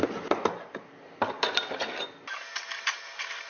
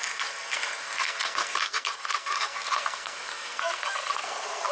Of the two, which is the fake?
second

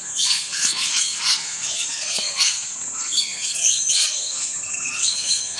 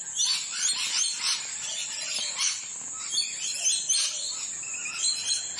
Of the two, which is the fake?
first